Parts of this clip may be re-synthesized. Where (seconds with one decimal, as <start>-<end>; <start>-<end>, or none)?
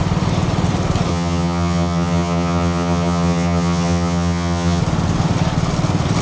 1.1-4.8